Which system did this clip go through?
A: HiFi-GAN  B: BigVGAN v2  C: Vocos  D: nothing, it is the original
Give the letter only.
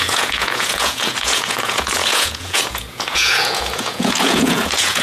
C